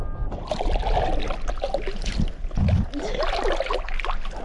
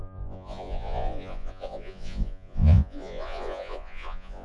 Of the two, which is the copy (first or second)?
second